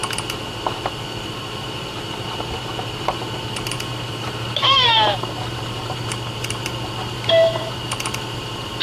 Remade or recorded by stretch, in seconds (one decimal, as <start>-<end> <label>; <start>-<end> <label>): 0.0-1.2 recorded; 1.2-8.8 remade